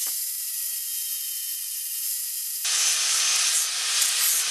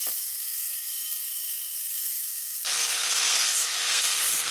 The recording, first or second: first